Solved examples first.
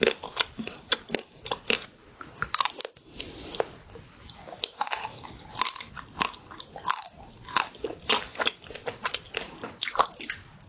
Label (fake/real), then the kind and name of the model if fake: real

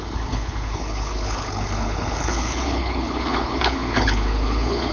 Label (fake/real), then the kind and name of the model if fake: fake, codec, HILCodec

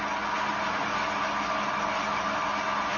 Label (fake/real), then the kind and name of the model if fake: real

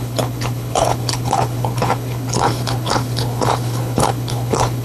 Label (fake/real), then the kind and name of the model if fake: fake, codec, HILCodec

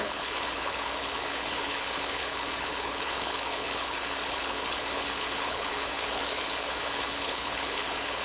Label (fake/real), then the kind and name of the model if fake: fake, codec, HILCodec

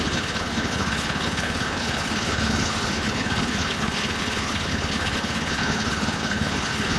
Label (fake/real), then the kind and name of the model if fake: fake, codec, HILCodec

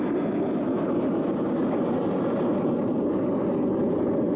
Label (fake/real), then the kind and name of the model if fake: real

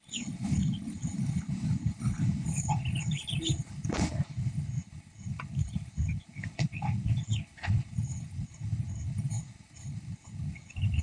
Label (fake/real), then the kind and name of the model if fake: fake, codec, HILCodec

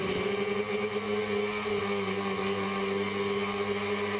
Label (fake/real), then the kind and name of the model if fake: real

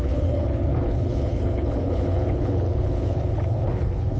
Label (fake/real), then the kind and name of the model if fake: fake, codec, HILCodec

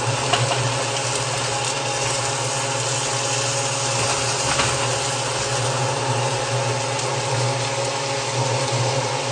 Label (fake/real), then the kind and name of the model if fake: real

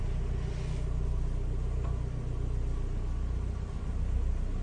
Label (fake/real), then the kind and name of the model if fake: real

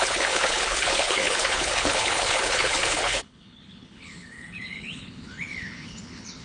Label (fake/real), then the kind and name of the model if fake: fake, codec, HILCodec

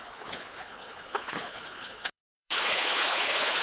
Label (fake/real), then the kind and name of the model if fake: fake, codec, HILCodec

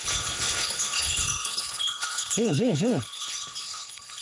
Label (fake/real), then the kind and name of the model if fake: fake, codec, HILCodec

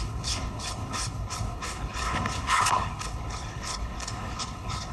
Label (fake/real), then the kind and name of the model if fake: fake, codec, HILCodec